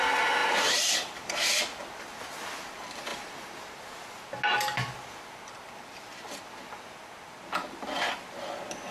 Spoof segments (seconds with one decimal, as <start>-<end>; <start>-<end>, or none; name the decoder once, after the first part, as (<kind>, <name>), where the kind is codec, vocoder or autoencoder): 0.4-1.3 (vocoder, BigVGAN v2)